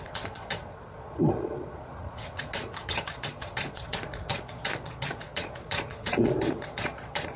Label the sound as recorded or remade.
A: remade